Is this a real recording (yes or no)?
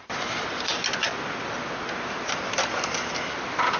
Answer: yes